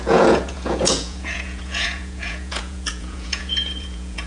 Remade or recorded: remade